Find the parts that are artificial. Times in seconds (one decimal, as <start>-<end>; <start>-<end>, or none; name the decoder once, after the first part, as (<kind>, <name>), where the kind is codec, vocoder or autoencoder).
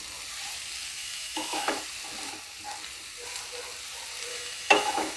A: 1.0-1.8 (autoencoder, DAC-VAE); 4.3-5.2